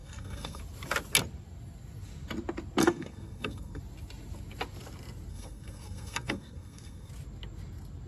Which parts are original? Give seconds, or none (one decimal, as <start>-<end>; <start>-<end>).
0.6-2.8; 3.8-5.3; 7.1-8.1